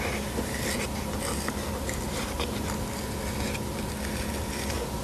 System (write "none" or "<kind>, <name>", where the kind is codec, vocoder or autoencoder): none